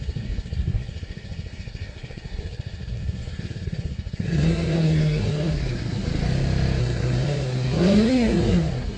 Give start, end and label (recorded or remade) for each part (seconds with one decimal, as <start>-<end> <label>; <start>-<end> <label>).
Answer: 0.0-6.1 remade; 6.1-6.8 recorded; 6.8-9.0 remade